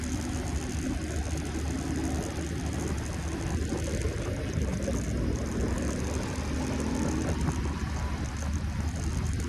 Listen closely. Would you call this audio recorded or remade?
recorded